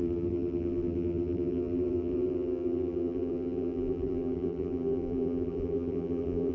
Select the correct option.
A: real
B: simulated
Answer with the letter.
B